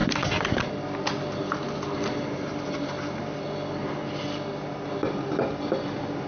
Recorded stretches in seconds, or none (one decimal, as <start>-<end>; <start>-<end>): 0.7-1.4; 3.2-6.3